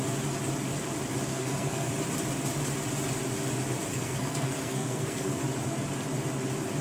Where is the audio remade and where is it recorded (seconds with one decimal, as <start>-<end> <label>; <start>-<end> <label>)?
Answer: 0.0-1.3 recorded; 1.3-1.9 remade; 1.9-3.9 recorded; 3.9-5.4 remade; 5.4-6.8 recorded